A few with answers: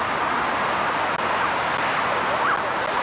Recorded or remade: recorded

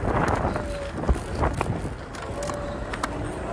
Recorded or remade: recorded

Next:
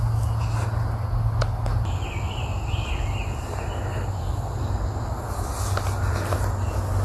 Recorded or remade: recorded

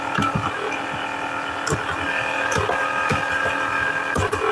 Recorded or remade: recorded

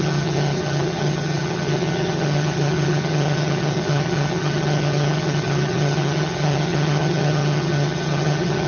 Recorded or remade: remade